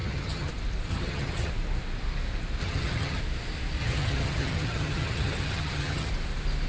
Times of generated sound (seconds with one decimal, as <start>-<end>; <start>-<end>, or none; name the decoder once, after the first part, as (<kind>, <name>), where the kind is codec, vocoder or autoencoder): 0.0-0.5 (vocoder, HiFi-GAN); 0.9-1.5; 2.6-3.2; 3.8-6.1